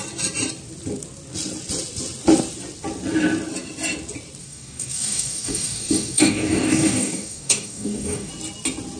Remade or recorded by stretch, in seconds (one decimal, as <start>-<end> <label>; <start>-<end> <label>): 0.0-4.4 recorded; 4.4-8.3 remade; 8.3-9.0 recorded

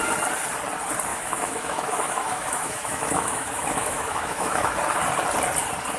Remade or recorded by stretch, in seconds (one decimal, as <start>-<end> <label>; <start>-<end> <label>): 0.0-1.1 recorded; 1.1-4.7 remade; 4.7-6.0 recorded

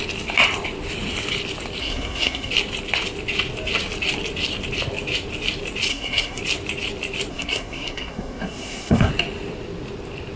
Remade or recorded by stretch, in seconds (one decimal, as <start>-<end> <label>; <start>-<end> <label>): 0.0-1.8 recorded; 1.8-2.5 remade; 2.5-5.9 recorded; 5.9-6.4 remade; 6.4-7.3 recorded; 7.3-9.1 remade; 9.1-10.4 recorded

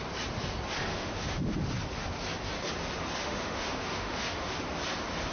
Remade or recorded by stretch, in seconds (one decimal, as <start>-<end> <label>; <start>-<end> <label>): 0.0-0.9 recorded; 0.9-1.5 remade; 1.5-3.2 recorded; 3.2-4.5 remade; 4.5-5.3 recorded

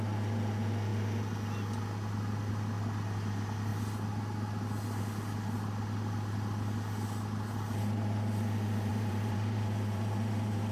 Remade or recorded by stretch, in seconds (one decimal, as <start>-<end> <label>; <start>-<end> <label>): 0.0-8.9 recorded; 8.9-10.7 remade

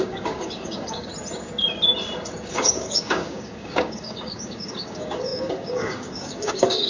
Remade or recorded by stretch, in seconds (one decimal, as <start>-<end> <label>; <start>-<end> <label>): 0.0-1.1 remade; 1.1-2.5 recorded; 2.5-6.9 remade